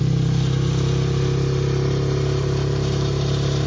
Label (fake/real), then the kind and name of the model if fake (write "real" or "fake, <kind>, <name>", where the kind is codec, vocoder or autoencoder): fake, vocoder, BigVGAN v2